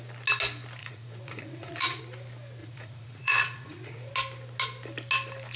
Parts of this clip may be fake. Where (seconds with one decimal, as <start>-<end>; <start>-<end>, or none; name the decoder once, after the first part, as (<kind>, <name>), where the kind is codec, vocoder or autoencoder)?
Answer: 0.8-2.0 (vocoder, Vocos); 2.6-4.1